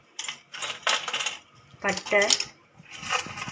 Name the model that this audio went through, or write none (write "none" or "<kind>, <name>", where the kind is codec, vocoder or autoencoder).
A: none